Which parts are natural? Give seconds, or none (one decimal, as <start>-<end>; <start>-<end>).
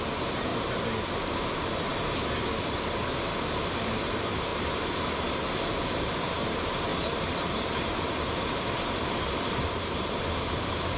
0.5-1.2; 1.9-3.8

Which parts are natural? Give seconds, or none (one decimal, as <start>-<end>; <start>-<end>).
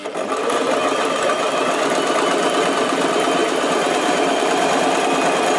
0.0-0.4; 1.8-3.4; 5.0-5.6